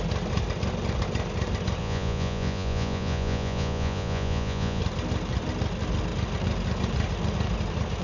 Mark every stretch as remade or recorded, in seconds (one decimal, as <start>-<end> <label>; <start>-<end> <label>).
0.0-1.8 recorded; 1.8-4.8 remade; 4.8-8.0 recorded